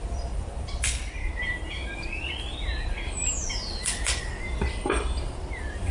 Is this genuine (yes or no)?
no